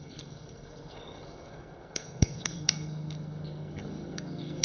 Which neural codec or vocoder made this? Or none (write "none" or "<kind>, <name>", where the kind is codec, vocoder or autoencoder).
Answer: codec, SNAC